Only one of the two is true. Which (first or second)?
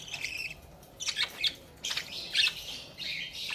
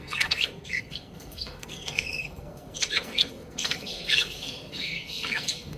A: first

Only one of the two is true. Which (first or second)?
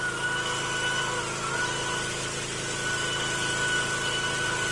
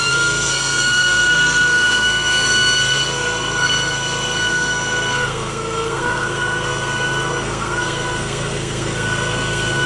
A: first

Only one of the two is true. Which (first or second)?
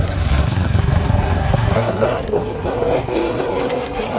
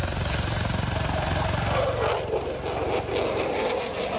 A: second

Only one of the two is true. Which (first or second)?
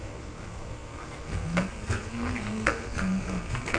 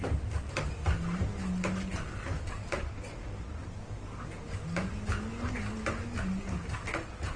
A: second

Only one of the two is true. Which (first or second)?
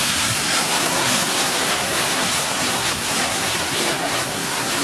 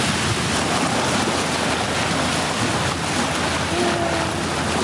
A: second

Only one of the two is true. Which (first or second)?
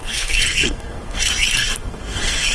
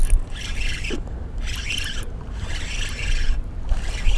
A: second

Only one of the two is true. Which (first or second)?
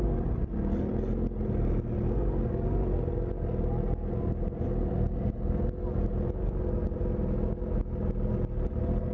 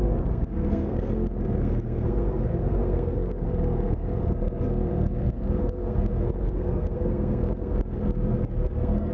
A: first